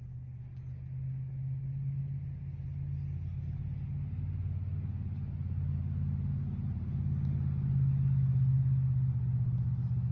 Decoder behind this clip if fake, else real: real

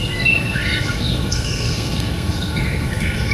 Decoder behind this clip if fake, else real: fake, codec, SNAC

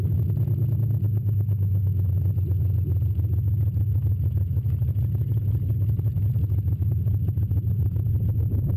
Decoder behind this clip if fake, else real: real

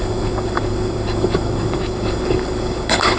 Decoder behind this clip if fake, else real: fake, codec, DAC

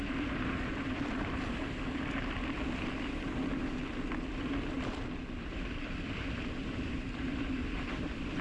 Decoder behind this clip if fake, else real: fake, vocoder, BigVGAN v2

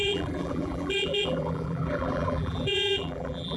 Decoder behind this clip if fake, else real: fake, vocoder, BigVGAN v2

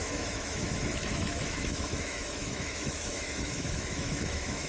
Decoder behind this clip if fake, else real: fake, autoencoder, DAC-VAE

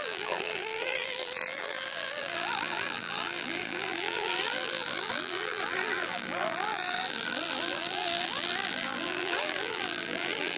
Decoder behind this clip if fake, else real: fake, vocoder, BigVGAN v2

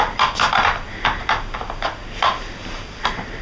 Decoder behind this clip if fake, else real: real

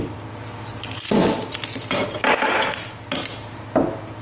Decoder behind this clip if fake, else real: real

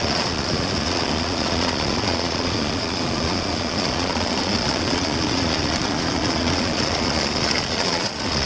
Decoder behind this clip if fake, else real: fake, vocoder, Vocos